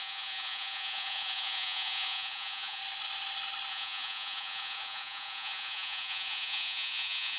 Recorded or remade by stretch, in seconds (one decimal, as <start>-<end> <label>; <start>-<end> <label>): 0.0-2.8 remade; 2.8-3.7 recorded; 3.7-7.4 remade